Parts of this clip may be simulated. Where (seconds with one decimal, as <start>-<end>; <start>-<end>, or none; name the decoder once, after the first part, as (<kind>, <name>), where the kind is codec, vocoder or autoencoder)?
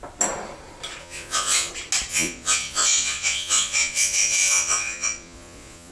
1.0-1.7 (vocoder, Vocos); 2.1-5.9